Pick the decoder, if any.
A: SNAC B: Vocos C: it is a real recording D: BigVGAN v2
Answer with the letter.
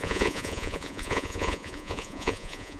B